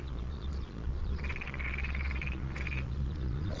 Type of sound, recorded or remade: remade